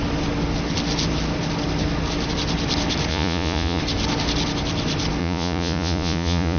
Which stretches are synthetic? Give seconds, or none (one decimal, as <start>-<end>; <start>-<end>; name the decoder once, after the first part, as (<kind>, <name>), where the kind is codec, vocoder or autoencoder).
3.1-3.8 (vocoder, Vocos); 5.2-6.6